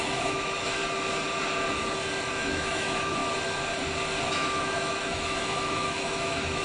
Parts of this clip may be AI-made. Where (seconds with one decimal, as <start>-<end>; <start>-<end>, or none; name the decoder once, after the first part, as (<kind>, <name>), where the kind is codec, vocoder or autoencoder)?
0.0-0.8 (autoencoder, DAC-VAE); 2.3-3.2; 4.2-6.6